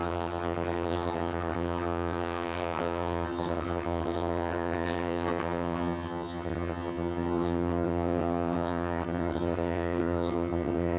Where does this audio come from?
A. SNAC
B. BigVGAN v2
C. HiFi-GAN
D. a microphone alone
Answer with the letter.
C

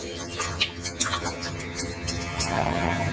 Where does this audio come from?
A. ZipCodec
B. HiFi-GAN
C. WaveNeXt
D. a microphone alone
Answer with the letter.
B